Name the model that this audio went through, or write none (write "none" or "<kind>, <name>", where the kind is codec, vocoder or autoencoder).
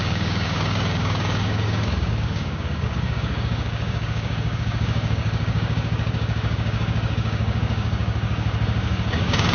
codec, DAC